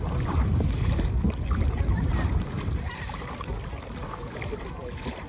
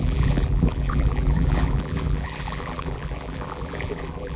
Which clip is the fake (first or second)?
second